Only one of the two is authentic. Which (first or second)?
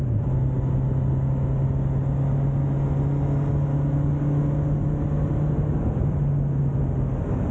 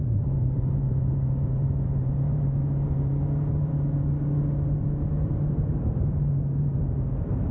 first